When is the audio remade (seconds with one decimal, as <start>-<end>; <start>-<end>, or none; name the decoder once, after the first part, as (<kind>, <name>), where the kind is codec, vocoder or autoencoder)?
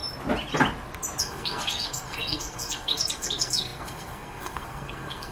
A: 1.2-5.3 (codec, SNAC)